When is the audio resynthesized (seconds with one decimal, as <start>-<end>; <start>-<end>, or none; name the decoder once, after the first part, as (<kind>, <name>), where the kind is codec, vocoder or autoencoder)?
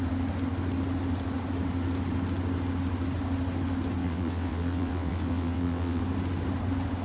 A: 4.0-6.0 (vocoder, WaveNeXt)